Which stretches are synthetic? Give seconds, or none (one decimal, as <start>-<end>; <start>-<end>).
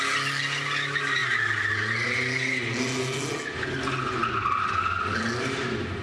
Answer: none